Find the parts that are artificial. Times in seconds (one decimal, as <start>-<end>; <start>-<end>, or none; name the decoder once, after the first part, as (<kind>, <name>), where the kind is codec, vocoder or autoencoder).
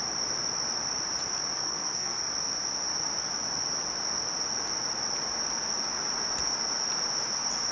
1.6-2.3 (codec, SNAC)